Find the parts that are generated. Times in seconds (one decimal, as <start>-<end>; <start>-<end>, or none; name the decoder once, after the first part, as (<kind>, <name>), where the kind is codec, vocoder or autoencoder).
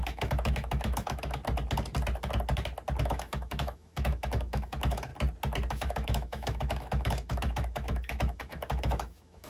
0.0-1.4 (autoencoder, DAC-VAE); 3.0-5.1; 5.7-9.5